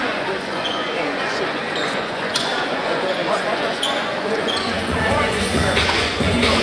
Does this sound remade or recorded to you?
remade